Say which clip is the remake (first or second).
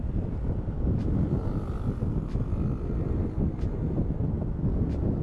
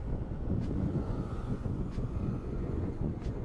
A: second